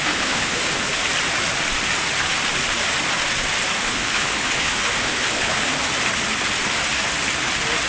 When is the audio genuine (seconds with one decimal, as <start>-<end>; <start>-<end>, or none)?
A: 1.0-3.8; 5.7-7.9